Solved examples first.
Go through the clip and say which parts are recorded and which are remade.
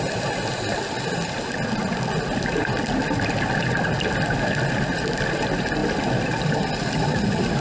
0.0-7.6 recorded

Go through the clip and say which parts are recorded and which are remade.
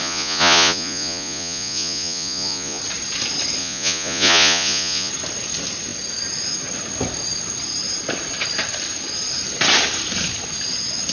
0.0-2.8 remade; 2.8-3.6 recorded; 3.6-5.1 remade; 5.1-11.1 recorded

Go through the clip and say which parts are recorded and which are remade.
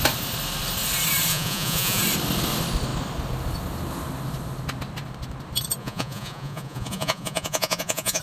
0.0-1.3 recorded; 1.3-2.0 remade; 2.0-5.8 recorded; 5.8-8.2 remade